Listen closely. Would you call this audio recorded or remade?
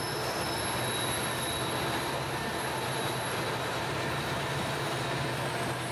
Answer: recorded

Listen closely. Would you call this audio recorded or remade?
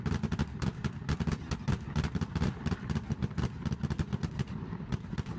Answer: recorded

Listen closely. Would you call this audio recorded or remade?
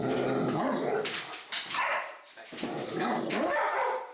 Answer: remade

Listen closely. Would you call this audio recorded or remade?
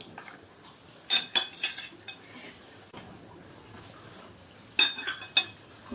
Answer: recorded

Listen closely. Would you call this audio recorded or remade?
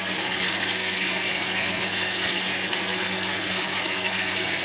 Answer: remade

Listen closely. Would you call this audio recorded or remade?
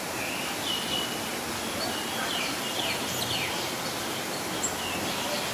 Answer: recorded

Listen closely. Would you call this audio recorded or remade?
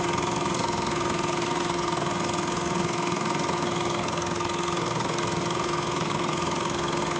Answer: remade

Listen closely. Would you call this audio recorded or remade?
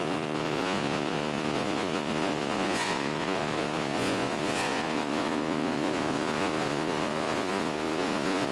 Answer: remade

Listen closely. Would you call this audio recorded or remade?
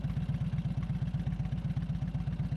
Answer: recorded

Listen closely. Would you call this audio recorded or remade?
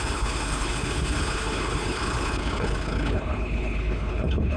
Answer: remade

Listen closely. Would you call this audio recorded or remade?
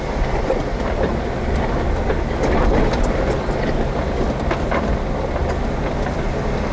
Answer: recorded